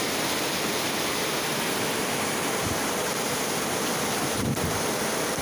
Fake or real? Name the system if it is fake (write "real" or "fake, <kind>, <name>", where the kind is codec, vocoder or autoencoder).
real